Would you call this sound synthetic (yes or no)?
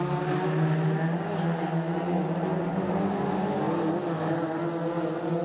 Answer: no